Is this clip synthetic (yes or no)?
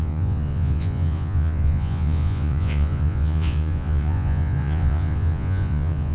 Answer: yes